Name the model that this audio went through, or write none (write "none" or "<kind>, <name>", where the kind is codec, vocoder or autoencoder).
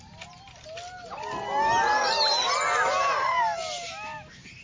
none